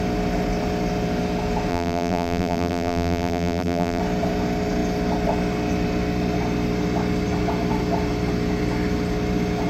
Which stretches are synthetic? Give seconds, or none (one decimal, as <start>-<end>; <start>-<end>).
1.7-4.0